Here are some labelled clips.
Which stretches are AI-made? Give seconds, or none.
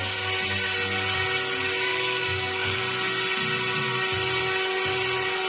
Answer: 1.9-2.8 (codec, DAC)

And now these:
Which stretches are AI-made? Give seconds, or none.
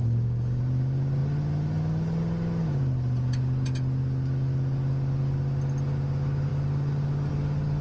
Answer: 0.0-0.6 (codec, DAC)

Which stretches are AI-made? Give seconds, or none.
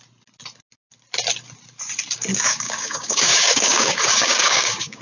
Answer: 2.3-5.0 (codec, DAC)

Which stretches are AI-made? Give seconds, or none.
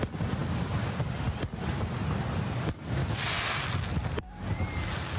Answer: 0.4-1.0 (codec, DAC)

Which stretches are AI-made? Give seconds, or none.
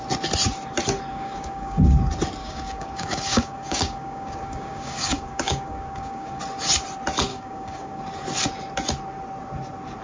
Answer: 1.1-1.8 (codec, DAC); 2.4-6.4; 7.3-8.0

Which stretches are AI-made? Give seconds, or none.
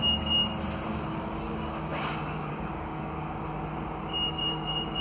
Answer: 0.0-0.4 (codec, DAC); 0.9-3.7; 4.3-5.0